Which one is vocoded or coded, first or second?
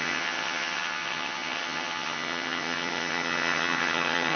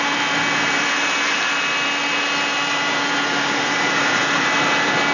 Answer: first